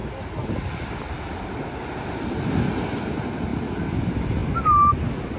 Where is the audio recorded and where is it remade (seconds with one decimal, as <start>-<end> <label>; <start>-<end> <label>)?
0.0-5.4 recorded